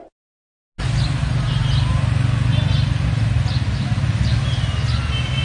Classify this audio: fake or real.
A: real